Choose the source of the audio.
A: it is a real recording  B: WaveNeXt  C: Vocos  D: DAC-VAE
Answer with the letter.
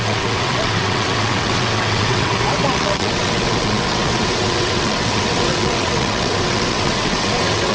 B